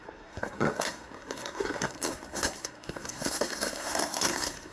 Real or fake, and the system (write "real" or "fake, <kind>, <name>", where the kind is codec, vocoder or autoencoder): fake, codec, SNAC